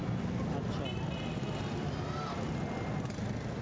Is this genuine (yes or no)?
yes